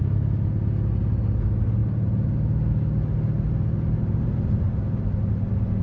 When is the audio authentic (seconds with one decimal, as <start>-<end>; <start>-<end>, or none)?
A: 0.0-5.8